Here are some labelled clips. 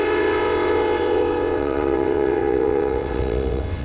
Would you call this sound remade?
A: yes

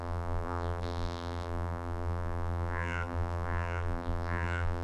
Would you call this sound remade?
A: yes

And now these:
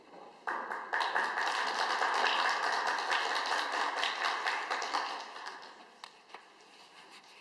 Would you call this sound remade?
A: no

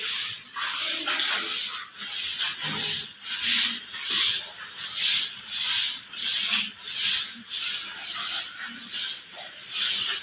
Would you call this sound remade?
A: no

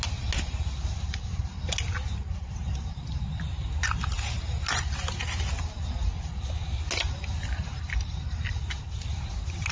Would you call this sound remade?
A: no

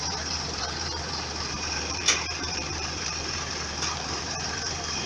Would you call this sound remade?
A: yes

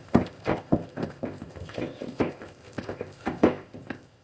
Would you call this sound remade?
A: yes